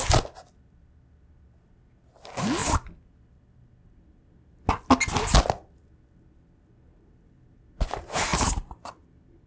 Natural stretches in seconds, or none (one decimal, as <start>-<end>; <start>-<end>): 0.0-8.3; 8.9-9.5